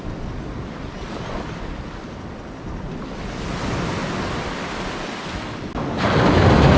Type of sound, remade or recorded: recorded